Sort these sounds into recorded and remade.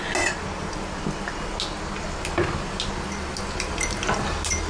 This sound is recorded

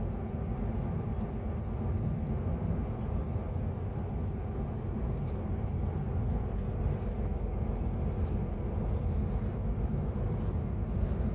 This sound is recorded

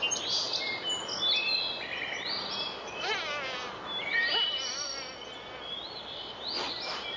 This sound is recorded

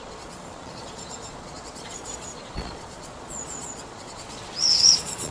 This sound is remade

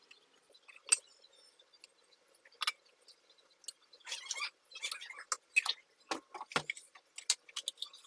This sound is recorded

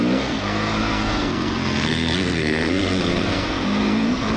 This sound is remade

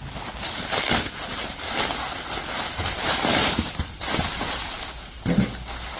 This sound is recorded